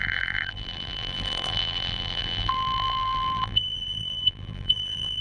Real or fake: fake